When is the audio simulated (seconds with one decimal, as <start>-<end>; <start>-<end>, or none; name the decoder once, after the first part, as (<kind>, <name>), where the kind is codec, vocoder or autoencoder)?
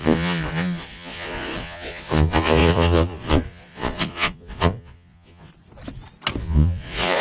0.0-5.5 (vocoder, Vocos); 6.4-7.2